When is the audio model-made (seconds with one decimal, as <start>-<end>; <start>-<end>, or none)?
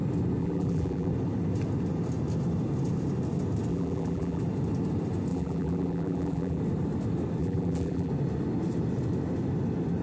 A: 0.4-1.1; 3.7-4.4; 5.3-6.6; 7.4-8.1